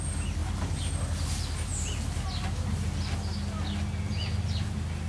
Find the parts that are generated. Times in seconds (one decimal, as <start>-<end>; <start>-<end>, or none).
0.4-0.9